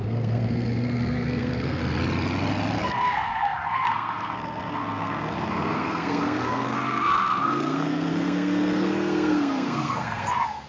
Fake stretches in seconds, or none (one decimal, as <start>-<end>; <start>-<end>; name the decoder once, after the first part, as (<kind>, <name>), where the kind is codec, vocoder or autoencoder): 0.0-1.8 (codec, SNAC); 2.8-10.7